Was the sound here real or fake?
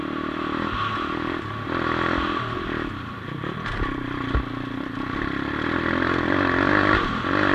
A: real